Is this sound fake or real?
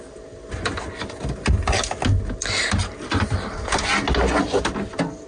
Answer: real